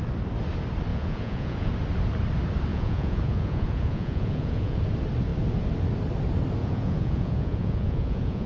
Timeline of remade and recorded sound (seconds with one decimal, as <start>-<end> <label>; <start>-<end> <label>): 0.0-0.9 recorded; 0.9-1.7 remade; 1.7-2.7 recorded; 2.7-4.8 remade; 4.8-6.6 recorded; 6.6-8.5 remade